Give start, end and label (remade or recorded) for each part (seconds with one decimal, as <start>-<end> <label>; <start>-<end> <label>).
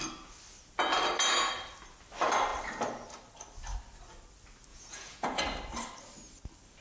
0.0-4.7 recorded; 4.7-5.4 remade; 5.4-6.8 recorded